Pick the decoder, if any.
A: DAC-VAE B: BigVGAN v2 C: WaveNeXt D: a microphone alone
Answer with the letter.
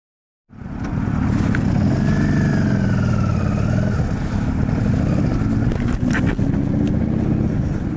D